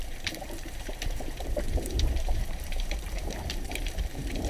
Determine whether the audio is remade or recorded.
remade